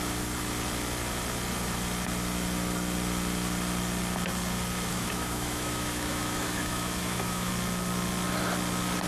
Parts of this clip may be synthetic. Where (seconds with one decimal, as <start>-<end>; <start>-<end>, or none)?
4.9-7.5